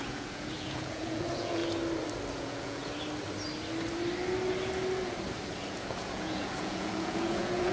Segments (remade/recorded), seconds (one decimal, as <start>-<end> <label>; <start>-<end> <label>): 0.0-1.6 remade; 1.6-2.3 recorded; 2.3-2.8 remade; 2.8-5.7 recorded; 5.7-7.7 remade